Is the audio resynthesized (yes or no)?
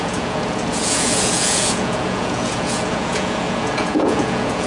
yes